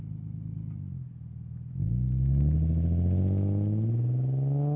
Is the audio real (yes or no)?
yes